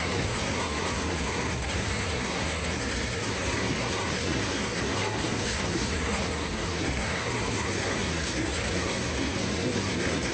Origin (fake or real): fake